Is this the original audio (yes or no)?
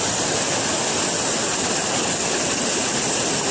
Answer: yes